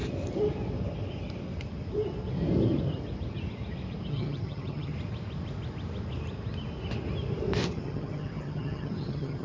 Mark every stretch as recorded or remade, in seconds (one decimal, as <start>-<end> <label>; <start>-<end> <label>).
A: 0.0-4.1 recorded; 4.1-4.9 remade; 4.9-7.7 recorded; 7.7-9.4 remade